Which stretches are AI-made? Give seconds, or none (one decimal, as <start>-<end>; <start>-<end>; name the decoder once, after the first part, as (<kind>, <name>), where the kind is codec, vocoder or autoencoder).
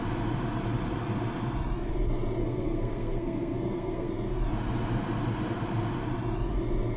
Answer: 2.4-4.1 (codec, SNAC)